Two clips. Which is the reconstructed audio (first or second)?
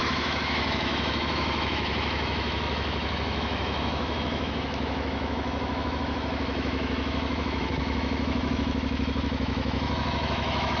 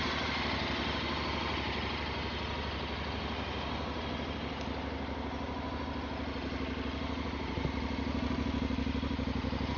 first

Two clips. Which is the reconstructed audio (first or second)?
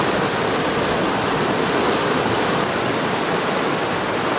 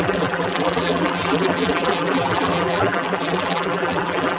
second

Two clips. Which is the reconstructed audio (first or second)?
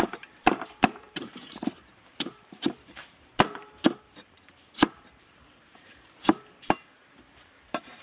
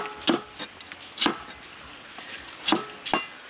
first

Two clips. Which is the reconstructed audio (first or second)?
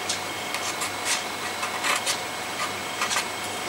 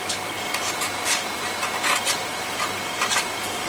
second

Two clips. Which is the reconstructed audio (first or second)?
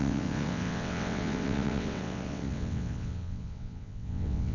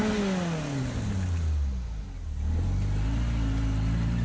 first